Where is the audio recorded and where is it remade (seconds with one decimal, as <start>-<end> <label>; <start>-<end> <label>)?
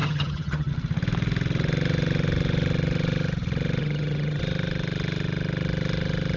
0.0-0.7 remade; 0.7-3.8 recorded; 3.8-4.4 remade; 4.4-6.4 recorded